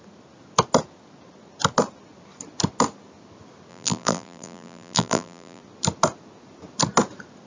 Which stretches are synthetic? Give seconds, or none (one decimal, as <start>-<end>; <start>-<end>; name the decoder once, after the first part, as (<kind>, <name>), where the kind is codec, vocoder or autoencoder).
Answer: 3.7-5.6 (vocoder, BigVGAN v2)